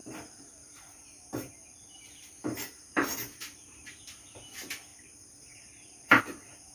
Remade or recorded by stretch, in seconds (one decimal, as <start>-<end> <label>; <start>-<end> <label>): 0.0-4.0 remade; 4.0-4.9 recorded; 4.9-6.2 remade; 6.2-6.7 recorded